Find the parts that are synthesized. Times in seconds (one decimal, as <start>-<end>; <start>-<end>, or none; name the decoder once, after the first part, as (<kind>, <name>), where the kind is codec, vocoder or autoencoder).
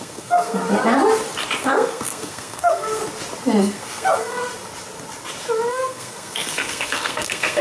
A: 0.0-0.6 (codec, SNAC); 1.6-3.0; 3.6-4.4; 5.7-7.6